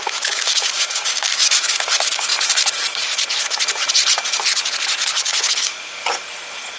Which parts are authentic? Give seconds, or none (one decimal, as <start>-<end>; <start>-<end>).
2.3-5.2; 6.0-6.8